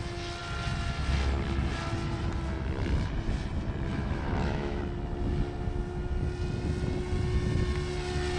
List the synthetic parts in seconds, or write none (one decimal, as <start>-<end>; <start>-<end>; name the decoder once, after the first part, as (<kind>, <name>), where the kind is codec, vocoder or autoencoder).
3.9-4.8 (autoencoder, DAC-VAE)